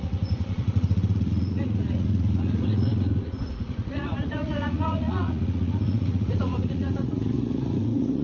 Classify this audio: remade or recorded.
remade